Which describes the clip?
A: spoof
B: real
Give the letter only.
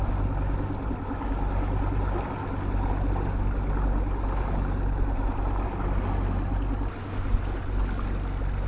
B